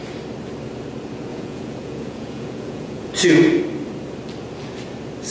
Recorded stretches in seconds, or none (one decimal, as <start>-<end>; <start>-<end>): 0.0-1.3; 3.6-5.3